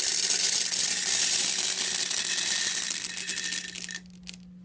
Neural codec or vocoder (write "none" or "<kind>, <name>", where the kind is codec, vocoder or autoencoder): none